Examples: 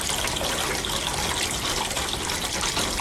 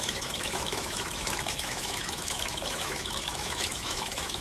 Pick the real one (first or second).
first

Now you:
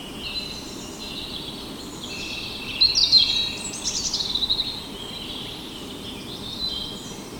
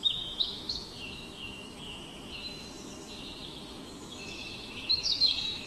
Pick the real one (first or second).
first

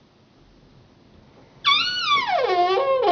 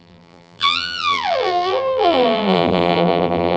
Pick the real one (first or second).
first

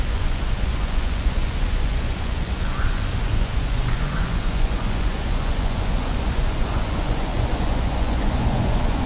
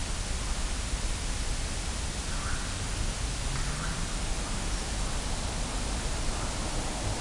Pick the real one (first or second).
second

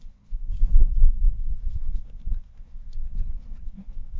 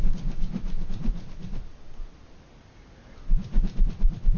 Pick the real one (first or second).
second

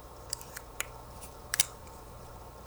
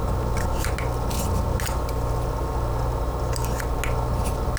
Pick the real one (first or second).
second